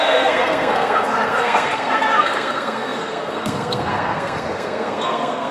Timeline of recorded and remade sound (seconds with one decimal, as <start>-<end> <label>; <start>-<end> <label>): 0.0-5.5 remade